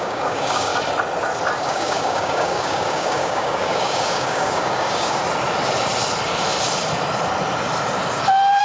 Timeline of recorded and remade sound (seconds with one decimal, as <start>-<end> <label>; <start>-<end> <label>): 0.0-0.7 remade; 0.7-1.6 recorded; 1.6-5.2 remade; 5.2-8.6 recorded

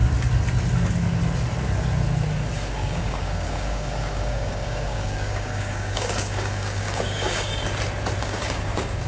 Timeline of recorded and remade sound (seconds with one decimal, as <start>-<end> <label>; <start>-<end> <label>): 0.0-2.7 recorded; 2.7-7.5 remade; 7.5-8.2 recorded; 8.2-9.1 remade

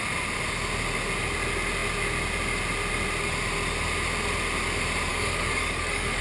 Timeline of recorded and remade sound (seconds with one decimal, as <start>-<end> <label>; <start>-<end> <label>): 0.0-5.1 recorded; 5.1-6.2 remade

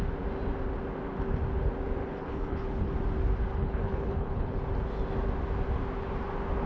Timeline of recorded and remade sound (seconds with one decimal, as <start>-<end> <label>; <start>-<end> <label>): 0.0-2.0 recorded; 2.0-2.9 remade; 2.9-3.5 recorded; 3.5-4.6 remade; 4.6-6.7 recorded

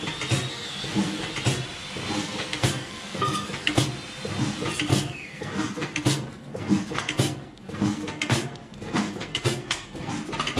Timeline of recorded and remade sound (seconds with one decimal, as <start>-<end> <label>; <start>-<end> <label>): 0.0-0.5 recorded; 0.5-1.3 remade; 1.3-2.2 recorded; 2.2-3.8 remade; 3.8-4.9 recorded; 4.9-10.1 remade; 10.1-10.6 recorded

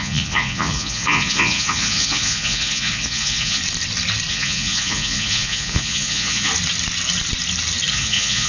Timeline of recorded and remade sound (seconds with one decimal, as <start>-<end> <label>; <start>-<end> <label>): 0.0-3.6 remade; 3.6-4.3 recorded; 4.3-6.5 remade; 6.5-7.9 recorded; 7.9-8.5 remade

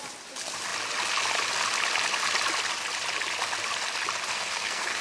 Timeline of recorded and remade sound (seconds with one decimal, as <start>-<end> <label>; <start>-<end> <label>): 0.0-4.3 recorded; 4.3-5.0 remade